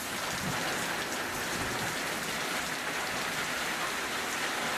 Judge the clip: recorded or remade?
recorded